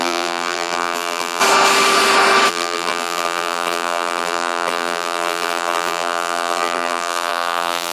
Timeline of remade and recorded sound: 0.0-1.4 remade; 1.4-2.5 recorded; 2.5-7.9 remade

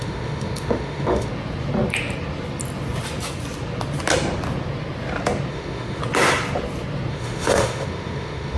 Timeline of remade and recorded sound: 0.0-1.3 remade; 1.3-5.5 recorded; 5.5-6.0 remade; 6.0-7.1 recorded; 7.1-8.6 remade

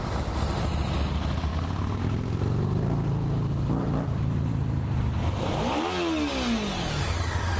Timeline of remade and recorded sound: 0.0-7.6 recorded